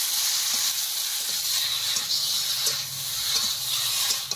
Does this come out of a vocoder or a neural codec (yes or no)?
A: no